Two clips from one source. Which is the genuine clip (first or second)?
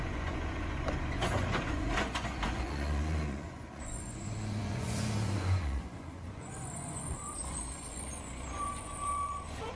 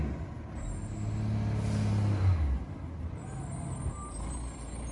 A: second